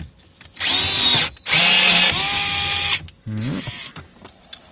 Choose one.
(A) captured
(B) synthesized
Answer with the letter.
A